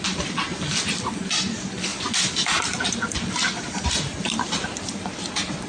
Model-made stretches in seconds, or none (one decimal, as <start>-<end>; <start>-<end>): none